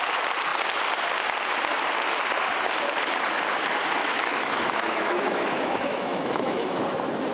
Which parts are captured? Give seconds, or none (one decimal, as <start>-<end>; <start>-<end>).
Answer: 0.0-4.0; 6.8-7.3